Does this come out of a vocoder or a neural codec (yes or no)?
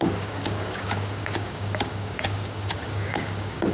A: yes